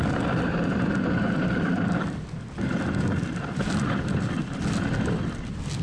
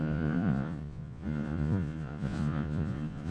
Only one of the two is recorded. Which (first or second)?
first